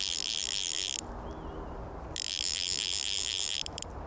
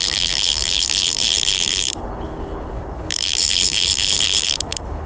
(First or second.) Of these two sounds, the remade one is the second